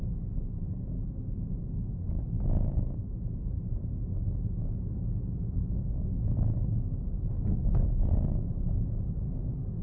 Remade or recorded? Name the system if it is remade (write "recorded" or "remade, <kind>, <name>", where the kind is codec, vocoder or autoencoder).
recorded